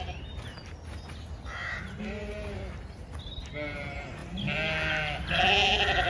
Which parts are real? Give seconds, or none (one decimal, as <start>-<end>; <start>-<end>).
0.0-6.1